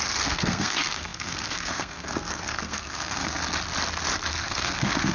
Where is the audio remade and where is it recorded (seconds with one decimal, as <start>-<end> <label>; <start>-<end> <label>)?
0.0-3.4 remade; 3.4-4.3 recorded; 4.3-5.1 remade